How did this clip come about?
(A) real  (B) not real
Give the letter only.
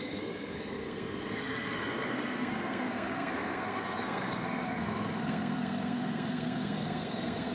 B